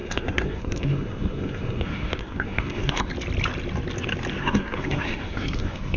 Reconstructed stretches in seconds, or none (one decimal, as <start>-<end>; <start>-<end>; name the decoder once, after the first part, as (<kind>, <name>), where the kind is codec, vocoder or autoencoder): 0.0-3.1 (codec, SNAC); 4.4-6.0